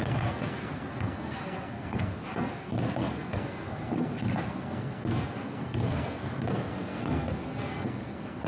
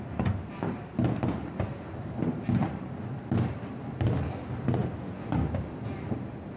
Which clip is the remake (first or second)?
first